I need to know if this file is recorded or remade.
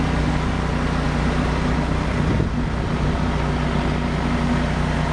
recorded